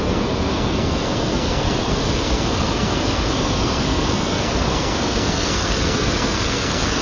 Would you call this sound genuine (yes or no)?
no